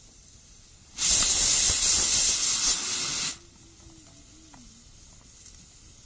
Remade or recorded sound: recorded